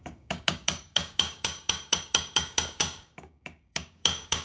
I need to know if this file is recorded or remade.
remade